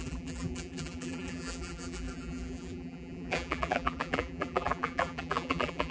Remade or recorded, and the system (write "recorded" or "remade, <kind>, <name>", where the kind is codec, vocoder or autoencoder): remade, vocoder, BigVGAN v2